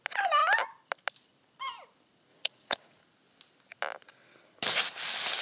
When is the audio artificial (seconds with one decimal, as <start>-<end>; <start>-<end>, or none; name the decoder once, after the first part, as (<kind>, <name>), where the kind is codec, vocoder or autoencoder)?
2.3-3.0 (vocoder, Vocos)

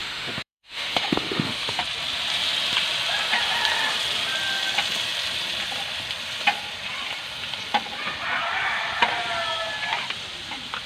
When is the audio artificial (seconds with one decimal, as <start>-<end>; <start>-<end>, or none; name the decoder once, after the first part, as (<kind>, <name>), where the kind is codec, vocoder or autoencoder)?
0.0-1.8 (autoencoder, DAC-VAE)

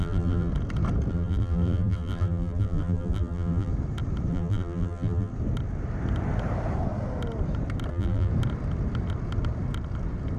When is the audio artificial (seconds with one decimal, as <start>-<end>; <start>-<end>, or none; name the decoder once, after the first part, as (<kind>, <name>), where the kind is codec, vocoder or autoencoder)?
0.0-0.5 (vocoder, BigVGAN v2); 1.1-3.7; 4.3-5.3; 7.9-8.3

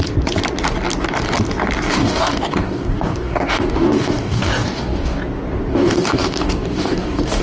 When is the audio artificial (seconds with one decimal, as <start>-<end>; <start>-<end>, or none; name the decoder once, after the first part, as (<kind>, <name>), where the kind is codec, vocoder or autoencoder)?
1.9-5.2 (codec, DAC); 5.7-7.4

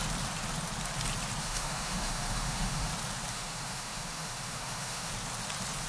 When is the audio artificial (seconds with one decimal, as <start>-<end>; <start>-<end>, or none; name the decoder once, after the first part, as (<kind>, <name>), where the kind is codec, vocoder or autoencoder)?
1.4-2.9 (autoencoder, DAC-VAE); 3.3-5.1

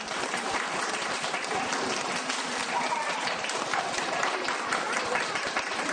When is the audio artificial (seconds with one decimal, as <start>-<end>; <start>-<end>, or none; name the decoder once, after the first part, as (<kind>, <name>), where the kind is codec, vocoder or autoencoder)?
none

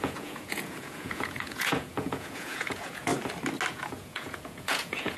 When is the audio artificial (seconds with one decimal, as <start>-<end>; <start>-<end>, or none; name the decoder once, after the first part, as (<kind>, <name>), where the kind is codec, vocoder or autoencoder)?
0.0-3.1 (vocoder, Vocos); 3.7-5.2

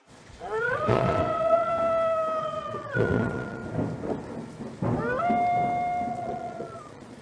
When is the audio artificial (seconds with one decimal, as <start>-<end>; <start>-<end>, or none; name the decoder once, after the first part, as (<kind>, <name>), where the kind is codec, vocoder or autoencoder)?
0.0-1.7 (vocoder, Vocos); 2.4-3.6; 6.1-7.2